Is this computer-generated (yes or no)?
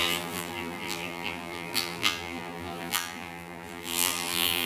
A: yes